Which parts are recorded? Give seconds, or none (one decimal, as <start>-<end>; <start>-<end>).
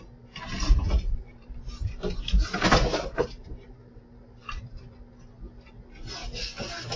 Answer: 0.0-1.3; 4.0-4.4; 4.9-7.0